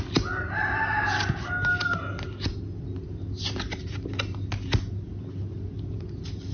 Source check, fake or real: real